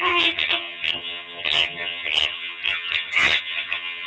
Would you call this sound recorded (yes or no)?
no